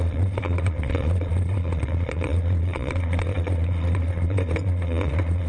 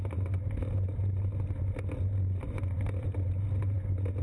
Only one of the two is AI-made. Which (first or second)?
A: first